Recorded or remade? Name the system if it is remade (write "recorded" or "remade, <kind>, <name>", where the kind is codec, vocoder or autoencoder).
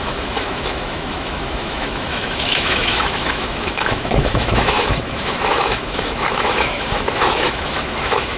remade, autoencoder, DAC-VAE